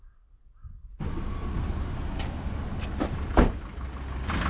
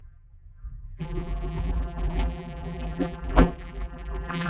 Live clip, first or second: first